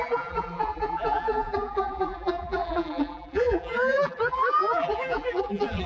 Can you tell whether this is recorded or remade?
remade